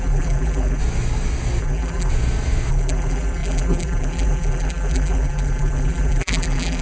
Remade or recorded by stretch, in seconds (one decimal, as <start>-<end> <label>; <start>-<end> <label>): 0.0-0.8 remade; 0.8-1.6 recorded; 1.6-2.1 remade; 2.1-2.7 recorded; 2.7-6.8 remade